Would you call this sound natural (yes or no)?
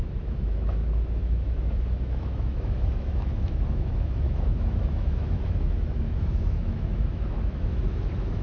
no